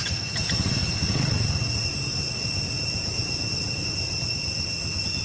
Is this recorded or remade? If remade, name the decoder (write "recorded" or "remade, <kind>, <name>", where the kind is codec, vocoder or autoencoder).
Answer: recorded